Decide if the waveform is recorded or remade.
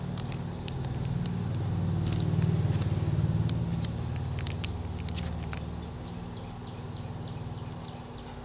recorded